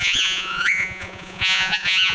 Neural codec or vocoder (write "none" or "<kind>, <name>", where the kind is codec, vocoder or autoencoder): vocoder, Vocos